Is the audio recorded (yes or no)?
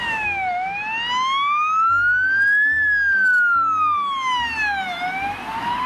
yes